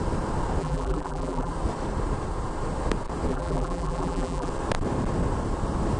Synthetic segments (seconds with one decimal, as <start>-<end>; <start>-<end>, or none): 0.6-1.5; 3.3-4.5